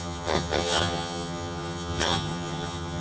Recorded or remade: remade